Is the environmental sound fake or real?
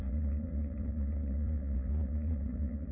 fake